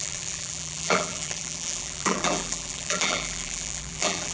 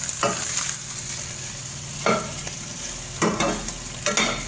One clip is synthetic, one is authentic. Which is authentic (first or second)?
second